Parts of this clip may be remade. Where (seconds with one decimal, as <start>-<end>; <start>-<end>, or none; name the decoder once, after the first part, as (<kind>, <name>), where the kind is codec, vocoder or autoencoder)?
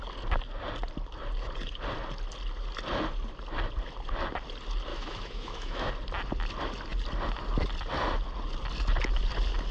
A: 4.9-5.9 (autoencoder, DAC-VAE)